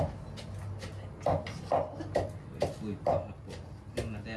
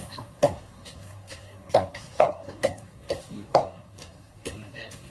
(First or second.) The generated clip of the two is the second